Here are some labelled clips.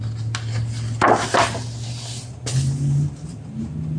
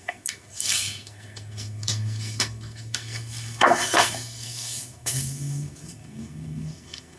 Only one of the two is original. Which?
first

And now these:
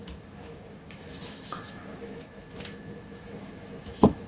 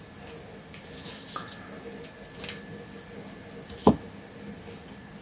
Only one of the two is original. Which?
second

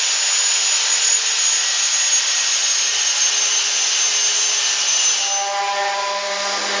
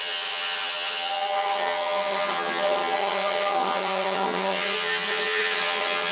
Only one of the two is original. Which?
first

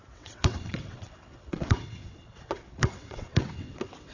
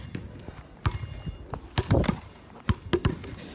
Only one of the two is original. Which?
second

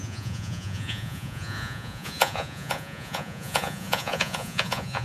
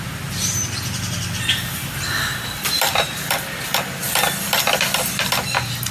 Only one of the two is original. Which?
second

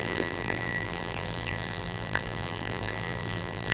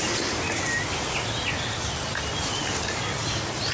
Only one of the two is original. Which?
second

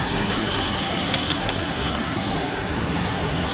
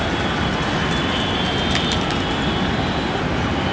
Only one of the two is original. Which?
second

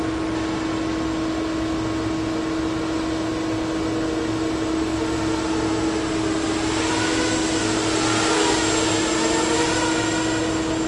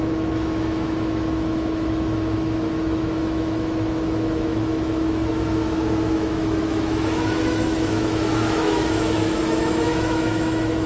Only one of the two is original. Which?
first